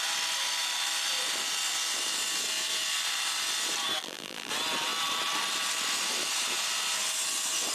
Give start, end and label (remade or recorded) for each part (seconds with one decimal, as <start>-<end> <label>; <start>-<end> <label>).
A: 0.0-4.0 recorded; 4.0-4.5 remade; 4.5-7.7 recorded